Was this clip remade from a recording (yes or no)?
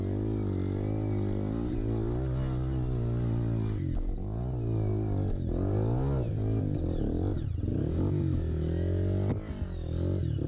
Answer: no